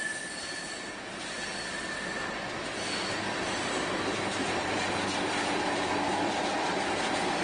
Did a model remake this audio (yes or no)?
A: no